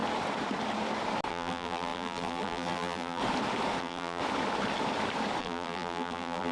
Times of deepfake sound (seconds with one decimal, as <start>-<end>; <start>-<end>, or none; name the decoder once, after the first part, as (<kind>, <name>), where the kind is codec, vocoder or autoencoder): 1.3-3.2 (vocoder, BigVGAN v2); 3.8-4.2; 5.4-6.5